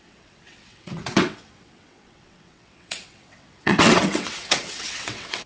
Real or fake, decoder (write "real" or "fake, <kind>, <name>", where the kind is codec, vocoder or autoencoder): fake, vocoder, WaveNeXt